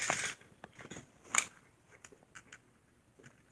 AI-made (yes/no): no